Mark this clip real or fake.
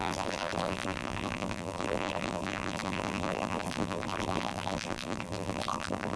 fake